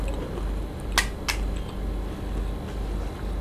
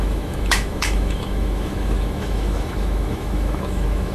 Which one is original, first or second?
first